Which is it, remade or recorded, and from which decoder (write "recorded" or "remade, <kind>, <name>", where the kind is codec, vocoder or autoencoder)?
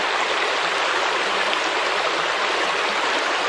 recorded